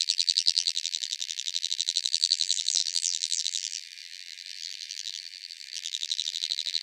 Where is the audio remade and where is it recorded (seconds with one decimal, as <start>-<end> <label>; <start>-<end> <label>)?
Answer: 0.0-6.8 remade